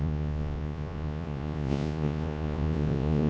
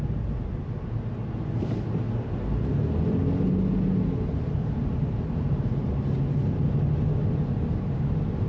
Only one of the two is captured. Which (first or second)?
second